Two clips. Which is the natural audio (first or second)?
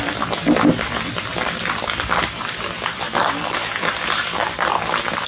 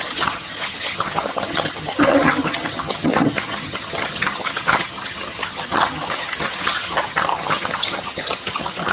first